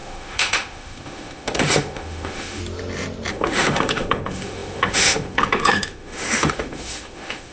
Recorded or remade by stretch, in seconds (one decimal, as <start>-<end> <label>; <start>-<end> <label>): 0.0-2.6 remade; 2.6-3.3 recorded; 3.3-7.5 remade